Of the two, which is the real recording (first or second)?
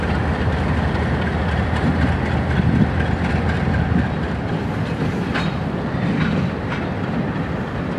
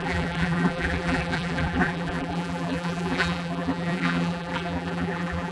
first